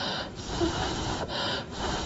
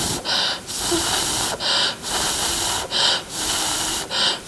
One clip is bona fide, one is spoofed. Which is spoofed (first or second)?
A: first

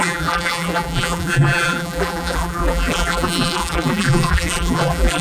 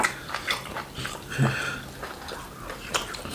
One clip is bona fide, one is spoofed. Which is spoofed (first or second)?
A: first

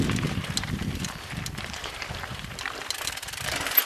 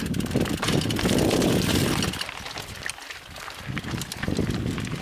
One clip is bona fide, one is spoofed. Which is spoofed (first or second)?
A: first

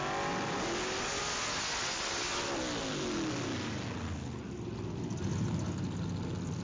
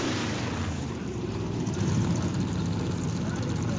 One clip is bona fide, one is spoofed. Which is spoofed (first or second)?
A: second